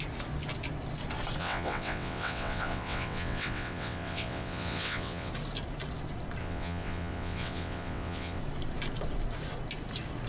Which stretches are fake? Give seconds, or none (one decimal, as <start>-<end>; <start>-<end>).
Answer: 1.4-5.3; 6.4-8.4